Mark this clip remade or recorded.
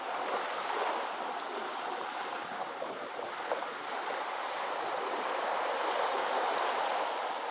recorded